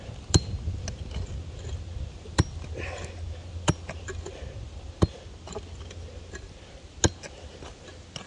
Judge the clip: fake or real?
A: real